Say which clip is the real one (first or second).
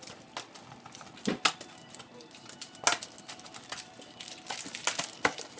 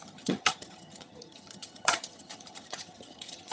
first